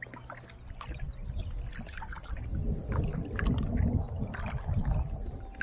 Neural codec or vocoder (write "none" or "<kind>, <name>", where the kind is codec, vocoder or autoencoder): none